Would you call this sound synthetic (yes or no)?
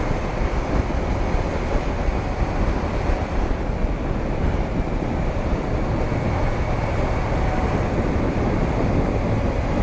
no